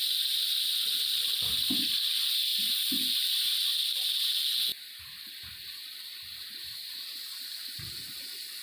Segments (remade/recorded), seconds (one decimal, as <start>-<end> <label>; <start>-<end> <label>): 0.0-4.7 recorded; 4.7-8.2 remade; 8.2-8.6 recorded